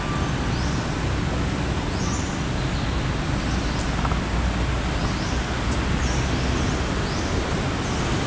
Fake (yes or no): no